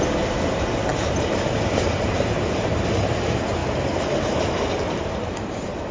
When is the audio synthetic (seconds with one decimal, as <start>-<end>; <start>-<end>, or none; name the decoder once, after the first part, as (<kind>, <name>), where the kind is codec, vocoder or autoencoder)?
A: 0.0-3.6 (vocoder, BigVGAN v2); 5.0-5.9